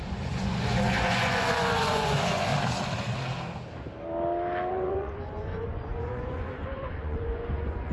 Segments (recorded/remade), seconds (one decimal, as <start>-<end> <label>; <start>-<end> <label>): 0.0-2.5 remade; 2.5-4.7 recorded; 4.7-7.9 remade